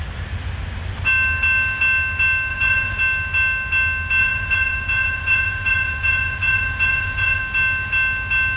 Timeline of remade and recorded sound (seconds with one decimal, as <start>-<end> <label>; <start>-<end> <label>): 0.0-2.5 recorded; 2.5-3.0 remade; 3.0-4.2 recorded; 4.2-7.4 remade; 7.4-8.6 recorded